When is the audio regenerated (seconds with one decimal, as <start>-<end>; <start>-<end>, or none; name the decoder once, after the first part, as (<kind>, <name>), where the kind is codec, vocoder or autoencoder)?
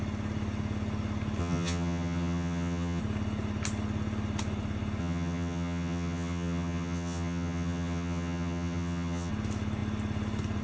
1.4-3.0 (vocoder, HiFi-GAN); 5.0-9.3